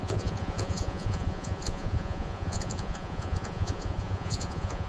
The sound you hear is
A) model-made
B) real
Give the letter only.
A